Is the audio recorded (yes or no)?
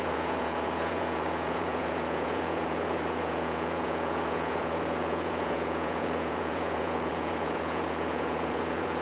no